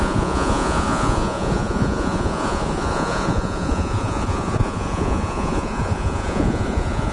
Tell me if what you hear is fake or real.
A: fake